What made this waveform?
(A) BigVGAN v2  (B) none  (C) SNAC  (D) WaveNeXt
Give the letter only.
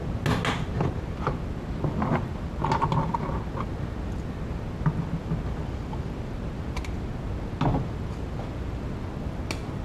B